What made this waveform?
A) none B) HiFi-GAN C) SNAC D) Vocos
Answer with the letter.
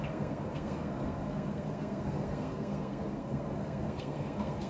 C